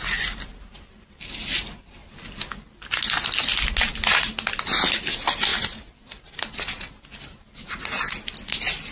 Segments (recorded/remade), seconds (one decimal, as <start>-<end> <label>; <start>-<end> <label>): 0.0-8.9 recorded